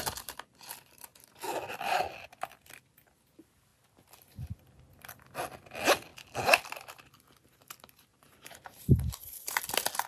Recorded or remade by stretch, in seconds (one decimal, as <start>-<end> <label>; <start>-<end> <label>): 0.0-8.1 recorded; 8.1-9.6 remade; 9.6-10.1 recorded

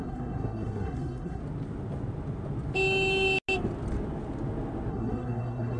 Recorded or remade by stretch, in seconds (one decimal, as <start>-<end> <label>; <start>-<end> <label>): 0.0-1.4 remade; 1.4-4.9 recorded; 4.9-5.8 remade

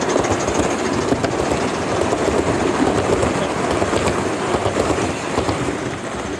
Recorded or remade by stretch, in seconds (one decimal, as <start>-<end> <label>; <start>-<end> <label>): 0.0-1.2 recorded; 1.2-3.2 remade; 3.2-4.6 recorded; 4.6-5.9 remade; 5.9-6.4 recorded

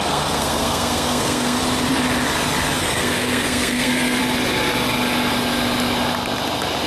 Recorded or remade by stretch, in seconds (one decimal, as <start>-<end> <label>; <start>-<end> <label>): 0.0-1.6 remade; 1.6-2.8 recorded; 2.8-4.2 remade; 4.2-6.9 recorded

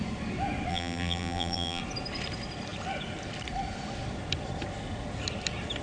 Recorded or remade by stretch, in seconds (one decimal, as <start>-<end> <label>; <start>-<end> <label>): 0.0-0.7 recorded; 0.7-1.8 remade; 1.8-5.8 recorded

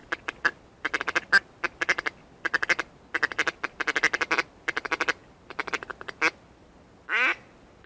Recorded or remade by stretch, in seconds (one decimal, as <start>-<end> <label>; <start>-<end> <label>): 0.0-7.9 recorded

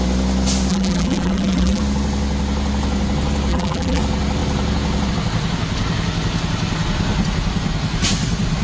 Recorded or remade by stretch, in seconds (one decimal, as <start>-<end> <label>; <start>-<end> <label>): 0.0-0.7 recorded; 0.7-1.8 remade; 1.8-3.5 recorded; 3.5-4.0 remade; 4.0-8.6 recorded

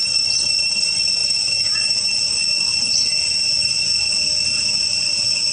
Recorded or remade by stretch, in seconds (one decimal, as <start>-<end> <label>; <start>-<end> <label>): 0.0-5.5 recorded